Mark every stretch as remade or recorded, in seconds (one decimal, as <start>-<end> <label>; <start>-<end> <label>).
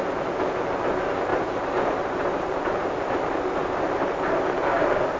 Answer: 0.0-5.2 recorded